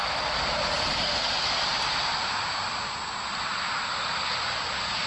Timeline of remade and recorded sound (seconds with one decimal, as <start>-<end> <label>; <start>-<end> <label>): 0.0-5.1 recorded